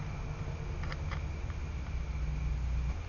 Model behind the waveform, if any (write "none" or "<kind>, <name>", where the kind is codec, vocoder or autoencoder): none